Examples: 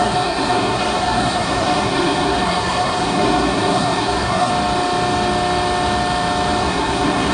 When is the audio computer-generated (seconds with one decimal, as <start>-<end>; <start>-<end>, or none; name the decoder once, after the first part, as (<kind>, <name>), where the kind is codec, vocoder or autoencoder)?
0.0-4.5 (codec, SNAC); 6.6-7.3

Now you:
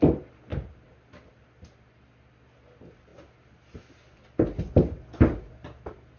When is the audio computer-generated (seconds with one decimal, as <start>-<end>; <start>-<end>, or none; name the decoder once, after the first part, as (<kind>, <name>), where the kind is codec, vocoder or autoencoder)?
none

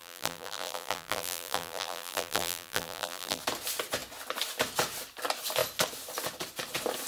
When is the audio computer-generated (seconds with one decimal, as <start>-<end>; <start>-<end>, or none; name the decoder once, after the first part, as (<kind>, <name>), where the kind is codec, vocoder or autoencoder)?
0.0-3.4 (vocoder, BigVGAN v2)

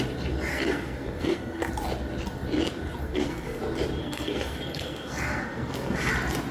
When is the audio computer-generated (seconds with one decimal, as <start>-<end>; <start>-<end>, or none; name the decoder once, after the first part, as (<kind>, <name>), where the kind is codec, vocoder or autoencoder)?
0.5-1.7 (codec, SNAC); 3.0-3.6; 4.0-6.1